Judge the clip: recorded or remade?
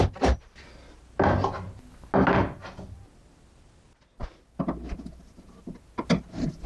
recorded